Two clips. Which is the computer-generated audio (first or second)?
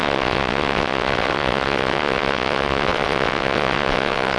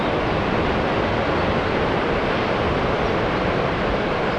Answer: first